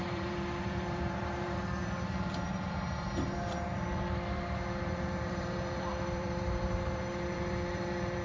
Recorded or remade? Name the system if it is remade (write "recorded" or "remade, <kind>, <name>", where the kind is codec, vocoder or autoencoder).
remade, vocoder, BigVGAN v2